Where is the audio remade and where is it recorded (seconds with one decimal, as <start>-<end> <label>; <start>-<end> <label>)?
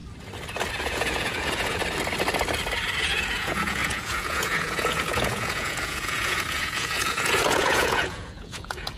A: 0.0-0.7 recorded; 0.7-1.8 remade; 1.8-3.0 recorded; 3.0-9.0 remade